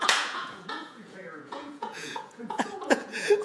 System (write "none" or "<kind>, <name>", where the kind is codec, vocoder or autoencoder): vocoder, Vocos